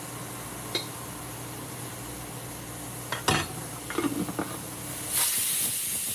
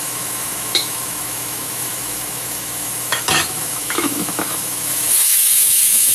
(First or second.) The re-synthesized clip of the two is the second